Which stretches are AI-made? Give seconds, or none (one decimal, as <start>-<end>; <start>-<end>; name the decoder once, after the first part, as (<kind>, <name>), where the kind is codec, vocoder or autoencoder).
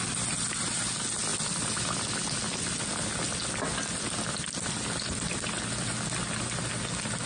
none